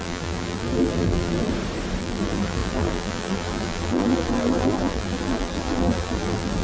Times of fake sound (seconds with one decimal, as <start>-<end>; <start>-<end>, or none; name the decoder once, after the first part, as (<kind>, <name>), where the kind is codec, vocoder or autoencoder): 0.0-1.5 (vocoder, BigVGAN v2); 2.0-6.6